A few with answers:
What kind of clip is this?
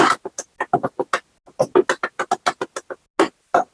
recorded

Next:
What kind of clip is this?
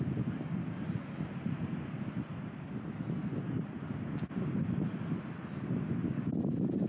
recorded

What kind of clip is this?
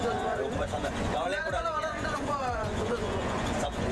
remade